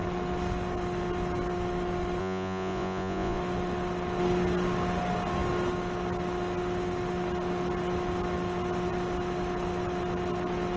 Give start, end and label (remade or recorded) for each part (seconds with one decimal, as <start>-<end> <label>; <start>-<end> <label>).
0.0-2.2 recorded; 2.2-3.4 remade; 3.4-10.8 recorded